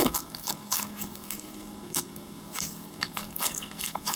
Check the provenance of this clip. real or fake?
fake